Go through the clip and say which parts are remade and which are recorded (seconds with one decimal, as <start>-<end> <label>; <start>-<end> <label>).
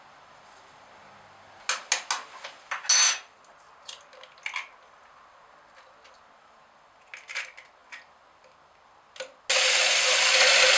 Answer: 0.0-10.8 recorded